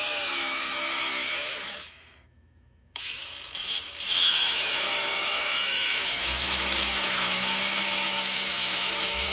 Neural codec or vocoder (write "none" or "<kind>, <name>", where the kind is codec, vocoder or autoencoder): autoencoder, DAC-VAE